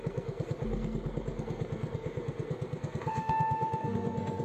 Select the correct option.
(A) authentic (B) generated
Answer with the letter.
B